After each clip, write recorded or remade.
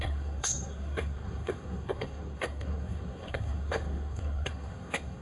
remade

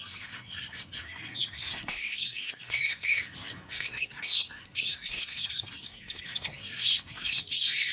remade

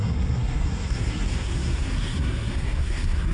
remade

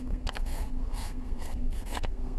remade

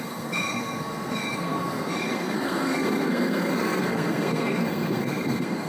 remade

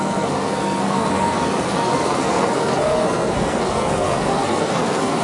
remade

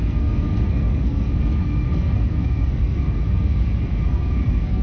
remade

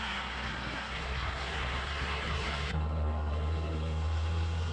remade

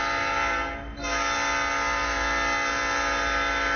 recorded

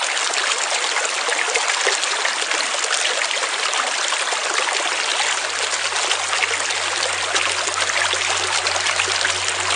recorded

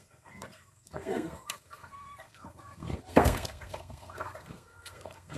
remade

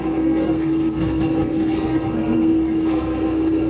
remade